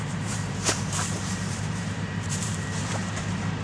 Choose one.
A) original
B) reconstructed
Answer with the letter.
B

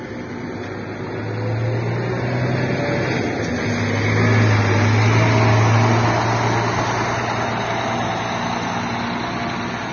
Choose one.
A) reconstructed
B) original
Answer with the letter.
B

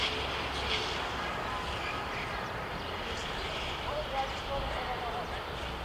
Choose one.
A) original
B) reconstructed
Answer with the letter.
A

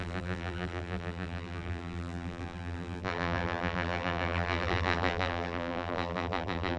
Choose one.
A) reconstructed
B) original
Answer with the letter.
A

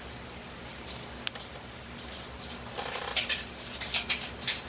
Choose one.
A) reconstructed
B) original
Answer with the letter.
B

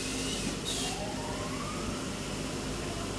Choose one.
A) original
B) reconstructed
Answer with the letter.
B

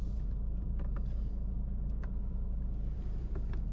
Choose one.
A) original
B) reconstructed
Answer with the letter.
B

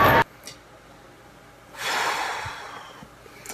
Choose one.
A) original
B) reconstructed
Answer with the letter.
A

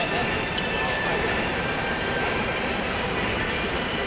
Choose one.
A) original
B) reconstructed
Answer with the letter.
B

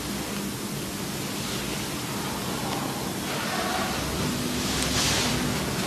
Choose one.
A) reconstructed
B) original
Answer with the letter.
B